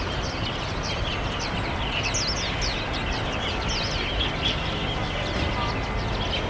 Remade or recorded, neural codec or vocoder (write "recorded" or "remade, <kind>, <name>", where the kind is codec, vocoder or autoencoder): recorded